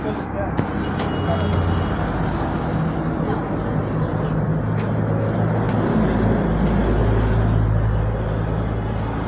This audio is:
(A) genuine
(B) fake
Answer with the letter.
A